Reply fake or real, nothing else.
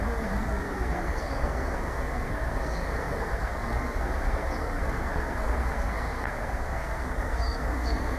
fake